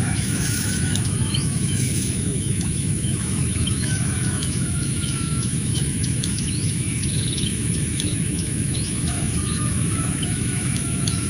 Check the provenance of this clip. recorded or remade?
remade